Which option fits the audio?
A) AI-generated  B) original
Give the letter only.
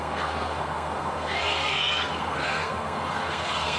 A